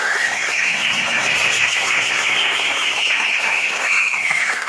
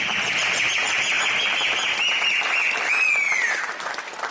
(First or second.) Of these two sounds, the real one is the second